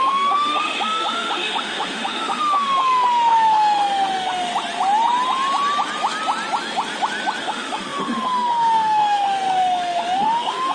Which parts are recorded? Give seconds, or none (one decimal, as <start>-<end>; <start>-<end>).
4.5-7.4